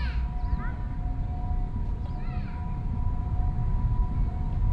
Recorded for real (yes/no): yes